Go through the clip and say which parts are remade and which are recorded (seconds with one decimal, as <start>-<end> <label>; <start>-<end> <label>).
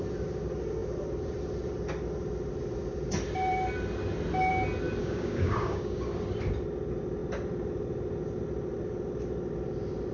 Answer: 0.0-5.0 recorded; 5.0-6.1 remade; 6.1-10.1 recorded